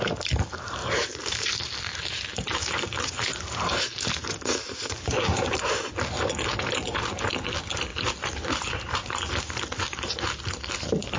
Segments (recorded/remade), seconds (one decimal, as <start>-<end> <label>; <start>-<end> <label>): 0.0-0.8 recorded; 0.8-5.9 remade; 5.9-7.9 recorded; 7.9-9.3 remade; 9.3-11.2 recorded